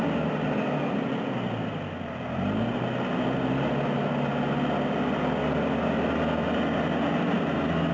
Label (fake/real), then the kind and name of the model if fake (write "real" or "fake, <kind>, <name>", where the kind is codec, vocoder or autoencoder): real